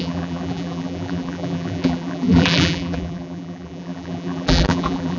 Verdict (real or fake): fake